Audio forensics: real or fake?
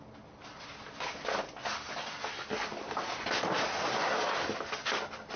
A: real